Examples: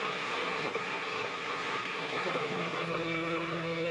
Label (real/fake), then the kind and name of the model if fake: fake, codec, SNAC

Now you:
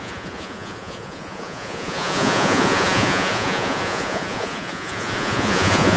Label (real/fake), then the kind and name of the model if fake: fake, vocoder, Vocos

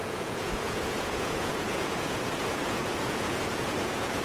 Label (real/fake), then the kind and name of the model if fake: fake, vocoder, Vocos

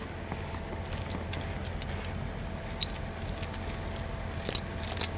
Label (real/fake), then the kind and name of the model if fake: real